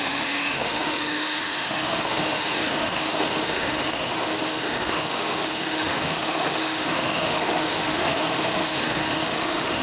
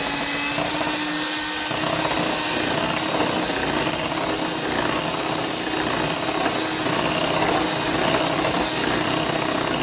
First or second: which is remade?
first